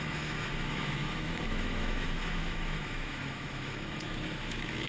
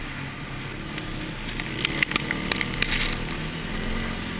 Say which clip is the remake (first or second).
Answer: first